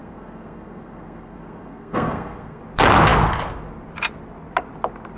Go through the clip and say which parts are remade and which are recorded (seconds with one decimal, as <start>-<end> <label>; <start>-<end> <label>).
0.0-2.6 remade; 2.6-5.2 recorded